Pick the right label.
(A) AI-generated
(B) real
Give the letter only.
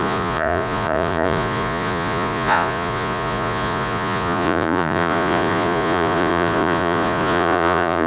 A